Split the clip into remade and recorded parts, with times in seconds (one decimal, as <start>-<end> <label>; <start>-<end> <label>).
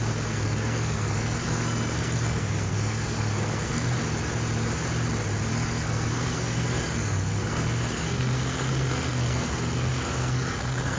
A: 0.0-4.0 remade; 4.0-5.5 recorded; 5.5-11.0 remade